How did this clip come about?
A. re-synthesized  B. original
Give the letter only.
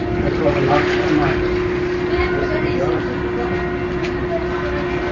B